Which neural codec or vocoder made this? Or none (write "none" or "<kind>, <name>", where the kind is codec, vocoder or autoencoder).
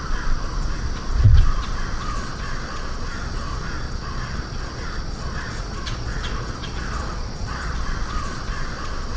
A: vocoder, Vocos